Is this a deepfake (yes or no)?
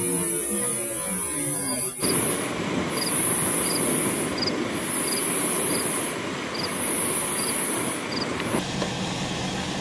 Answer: no